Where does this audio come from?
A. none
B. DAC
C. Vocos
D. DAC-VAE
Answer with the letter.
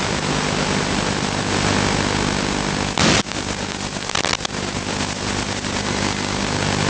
A